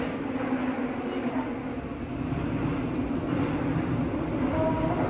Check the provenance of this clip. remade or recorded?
recorded